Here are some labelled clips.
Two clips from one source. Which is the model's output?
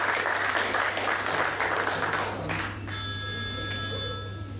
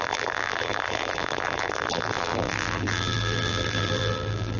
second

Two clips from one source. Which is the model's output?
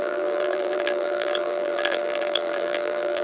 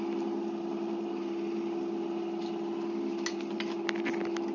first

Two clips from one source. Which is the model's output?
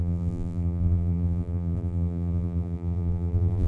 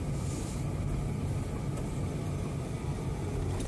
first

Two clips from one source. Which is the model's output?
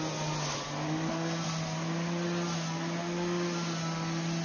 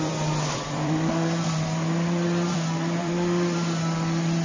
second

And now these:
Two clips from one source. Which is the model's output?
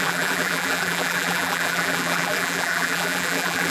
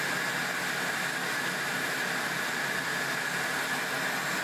first